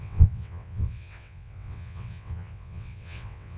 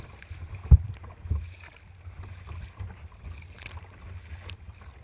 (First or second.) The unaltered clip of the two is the second